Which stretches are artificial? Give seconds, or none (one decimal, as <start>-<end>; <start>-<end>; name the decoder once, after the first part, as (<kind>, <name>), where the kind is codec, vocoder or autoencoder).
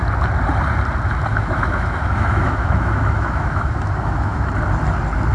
1.3-4.5 (autoencoder, DAC-VAE)